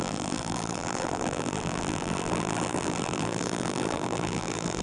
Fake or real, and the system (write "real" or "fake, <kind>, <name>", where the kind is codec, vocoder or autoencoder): fake, vocoder, BigVGAN v2